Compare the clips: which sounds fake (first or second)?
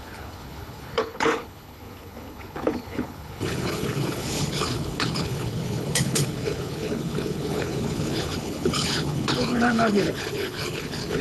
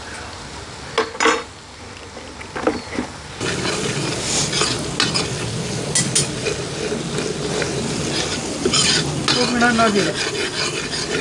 first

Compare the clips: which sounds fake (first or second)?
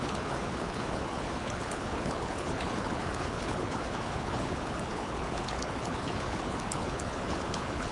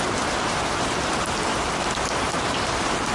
first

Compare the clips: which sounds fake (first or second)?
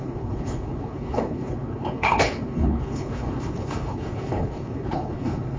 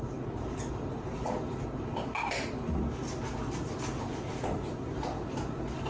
first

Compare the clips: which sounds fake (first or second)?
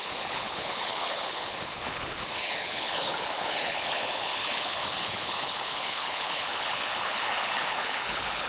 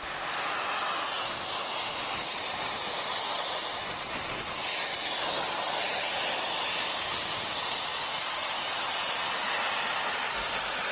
first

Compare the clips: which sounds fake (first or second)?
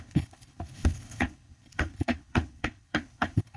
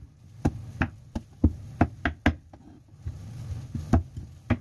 first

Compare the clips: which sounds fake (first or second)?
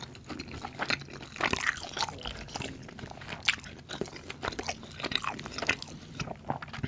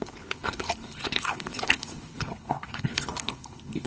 second